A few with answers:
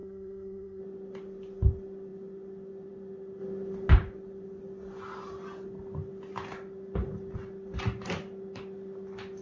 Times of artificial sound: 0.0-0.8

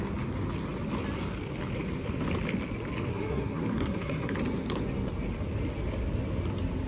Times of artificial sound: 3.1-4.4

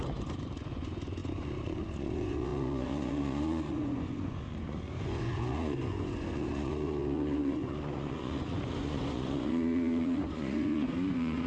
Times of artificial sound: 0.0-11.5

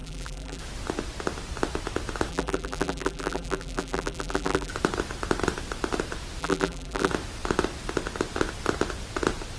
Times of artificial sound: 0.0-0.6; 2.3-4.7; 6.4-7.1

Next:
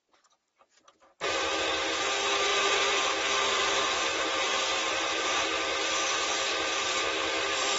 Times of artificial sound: none